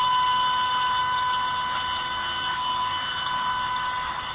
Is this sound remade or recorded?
recorded